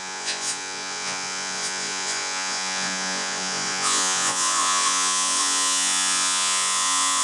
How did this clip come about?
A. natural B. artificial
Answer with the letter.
B